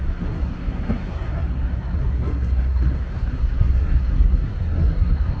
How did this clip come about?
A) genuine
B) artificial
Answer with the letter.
B